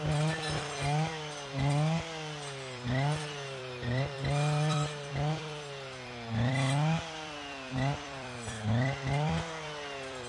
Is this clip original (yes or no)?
no